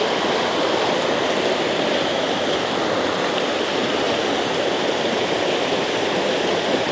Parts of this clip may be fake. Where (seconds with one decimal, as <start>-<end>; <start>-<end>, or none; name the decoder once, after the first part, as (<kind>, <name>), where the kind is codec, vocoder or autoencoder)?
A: 3.8-5.2 (vocoder, BigVGAN v2)